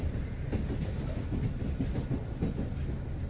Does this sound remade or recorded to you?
recorded